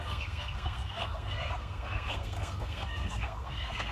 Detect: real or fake fake